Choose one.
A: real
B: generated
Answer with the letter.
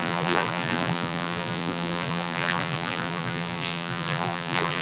B